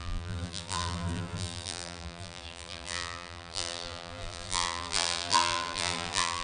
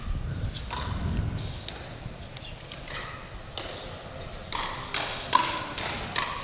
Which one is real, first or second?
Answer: second